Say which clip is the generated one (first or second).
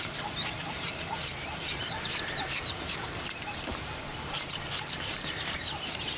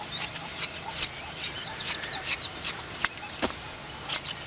first